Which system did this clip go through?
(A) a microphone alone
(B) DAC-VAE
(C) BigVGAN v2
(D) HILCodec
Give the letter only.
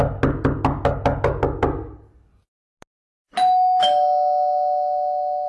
A